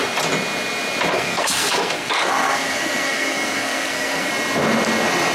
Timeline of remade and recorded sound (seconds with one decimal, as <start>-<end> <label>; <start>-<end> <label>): 0.0-1.1 recorded; 1.1-4.3 remade; 4.3-5.3 recorded